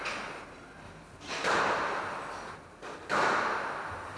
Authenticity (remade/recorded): recorded